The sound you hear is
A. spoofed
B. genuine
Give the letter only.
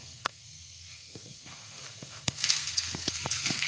A